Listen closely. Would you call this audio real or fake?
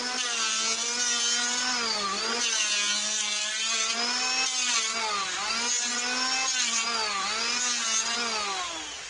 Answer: real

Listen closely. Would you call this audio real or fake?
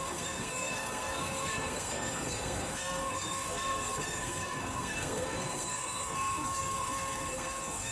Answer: fake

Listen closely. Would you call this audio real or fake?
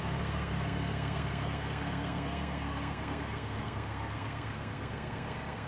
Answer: fake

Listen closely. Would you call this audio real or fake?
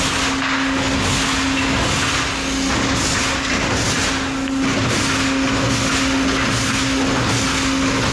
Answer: real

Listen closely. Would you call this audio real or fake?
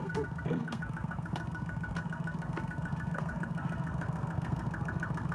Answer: fake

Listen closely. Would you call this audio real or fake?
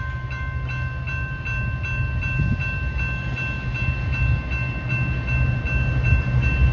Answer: real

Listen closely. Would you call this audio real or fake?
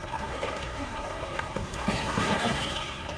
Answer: fake